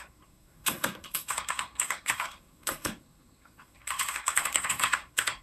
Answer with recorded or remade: remade